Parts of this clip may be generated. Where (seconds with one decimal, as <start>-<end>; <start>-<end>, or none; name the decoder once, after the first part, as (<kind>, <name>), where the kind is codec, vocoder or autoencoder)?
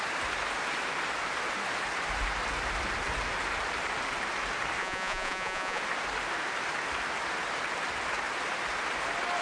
4.8-5.8 (vocoder, Vocos)